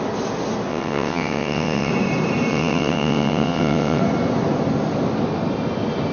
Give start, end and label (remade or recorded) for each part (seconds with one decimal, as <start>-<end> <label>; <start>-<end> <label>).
0.0-0.7 recorded; 0.7-1.9 remade; 1.9-2.5 recorded; 2.5-4.0 remade; 4.0-6.1 recorded